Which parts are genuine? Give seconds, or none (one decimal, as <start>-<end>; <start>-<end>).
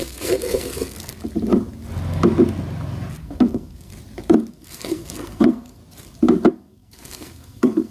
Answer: 1.1-3.2; 3.9-4.5; 5.8-6.5